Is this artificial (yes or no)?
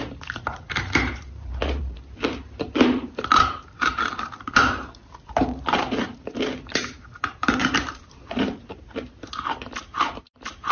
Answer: yes